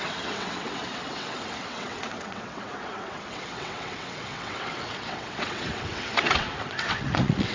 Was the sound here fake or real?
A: fake